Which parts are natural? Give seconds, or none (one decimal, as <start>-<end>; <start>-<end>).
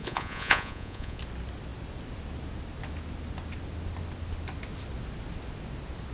1.2-6.1